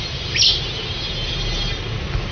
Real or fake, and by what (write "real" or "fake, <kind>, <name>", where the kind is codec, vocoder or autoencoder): real